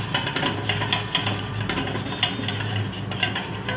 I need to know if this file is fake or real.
real